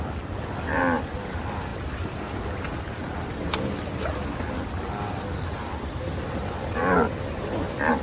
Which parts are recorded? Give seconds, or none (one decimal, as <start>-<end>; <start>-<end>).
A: 0.0-8.0

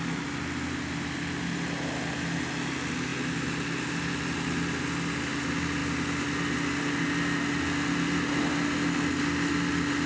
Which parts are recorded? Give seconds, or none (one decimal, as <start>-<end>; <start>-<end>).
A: 0.0-10.1

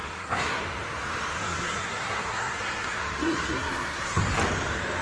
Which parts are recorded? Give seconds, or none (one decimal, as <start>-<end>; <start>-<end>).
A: 0.6-1.3; 4.2-5.0

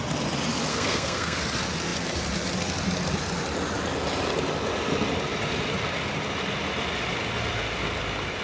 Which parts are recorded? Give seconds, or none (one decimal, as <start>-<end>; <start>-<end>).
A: 0.0-0.7; 1.4-8.4

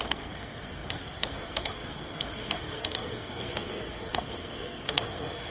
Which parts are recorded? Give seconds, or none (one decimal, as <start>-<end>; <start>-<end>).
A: none

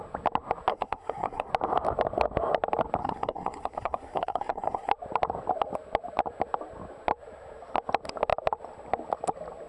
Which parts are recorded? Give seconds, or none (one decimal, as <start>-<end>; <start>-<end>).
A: 0.0-0.7; 1.5-3.0; 4.9-9.7

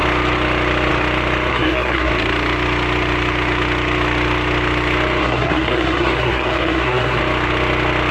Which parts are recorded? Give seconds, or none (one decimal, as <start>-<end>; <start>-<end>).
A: 0.0-1.5; 2.1-5.2; 7.2-8.1

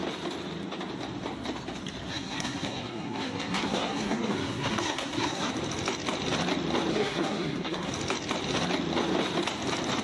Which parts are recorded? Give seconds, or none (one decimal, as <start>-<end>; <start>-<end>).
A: 0.0-2.1; 5.5-6.9; 7.9-10.0